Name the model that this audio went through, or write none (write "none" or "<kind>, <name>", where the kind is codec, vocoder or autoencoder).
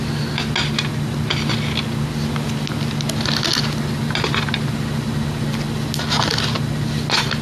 none